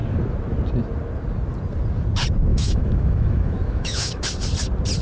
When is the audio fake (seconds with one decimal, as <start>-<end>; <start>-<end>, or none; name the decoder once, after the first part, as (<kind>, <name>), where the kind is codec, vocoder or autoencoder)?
2.5-4.2 (autoencoder, DAC-VAE)